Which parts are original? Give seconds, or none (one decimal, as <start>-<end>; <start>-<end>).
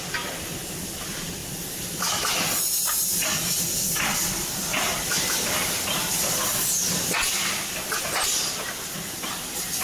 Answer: 0.0-9.8